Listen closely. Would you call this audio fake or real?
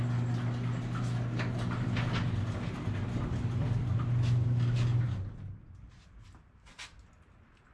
real